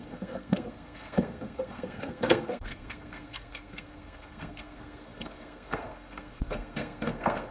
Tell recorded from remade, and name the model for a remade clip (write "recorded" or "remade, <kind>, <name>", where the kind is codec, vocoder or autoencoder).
remade, codec, SNAC